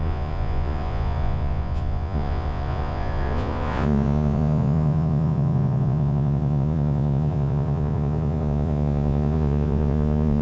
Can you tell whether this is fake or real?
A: fake